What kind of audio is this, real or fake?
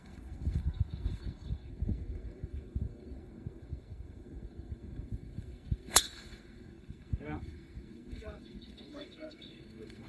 fake